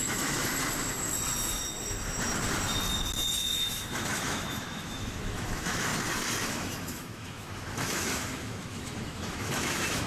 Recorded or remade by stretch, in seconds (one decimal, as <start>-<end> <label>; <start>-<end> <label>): 0.0-0.5 remade; 0.5-3.5 recorded; 3.5-5.9 remade; 5.9-6.4 recorded; 6.4-10.1 remade